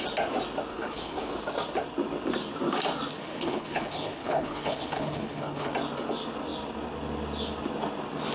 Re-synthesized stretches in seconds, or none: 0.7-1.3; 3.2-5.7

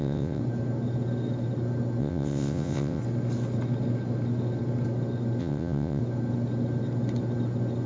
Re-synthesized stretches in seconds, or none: 0.0-0.4; 2.0-3.0; 5.4-6.0

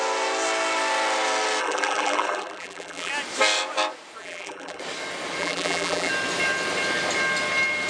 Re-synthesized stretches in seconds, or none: 1.6-3.1; 4.2-4.8; 5.4-6.1

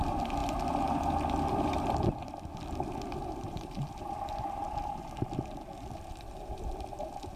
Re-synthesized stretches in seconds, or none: 0.0-0.4; 1.1-7.4

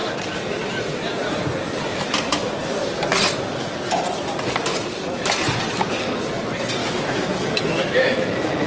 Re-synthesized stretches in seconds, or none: 6.8-8.7

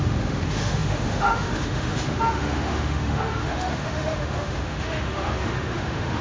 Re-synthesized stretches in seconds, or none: 0.0-6.2

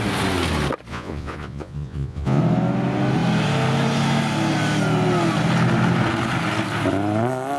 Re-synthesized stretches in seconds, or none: 0.9-2.4

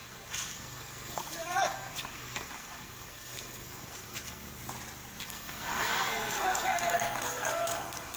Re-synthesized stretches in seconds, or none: 0.0-4.6; 5.2-8.2